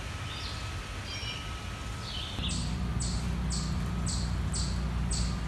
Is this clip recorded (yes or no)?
yes